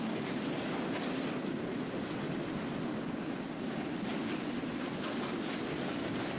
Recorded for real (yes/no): yes